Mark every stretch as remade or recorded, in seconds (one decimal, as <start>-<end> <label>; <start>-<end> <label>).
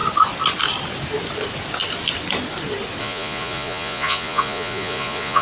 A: 0.0-3.0 recorded; 3.0-5.4 remade